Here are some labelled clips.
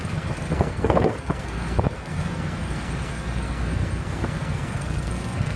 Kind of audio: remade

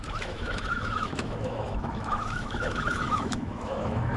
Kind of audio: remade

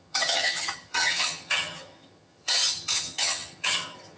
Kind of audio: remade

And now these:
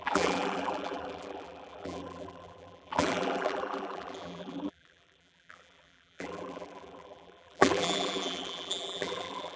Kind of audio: remade